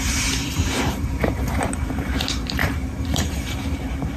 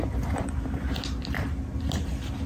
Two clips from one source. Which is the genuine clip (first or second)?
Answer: second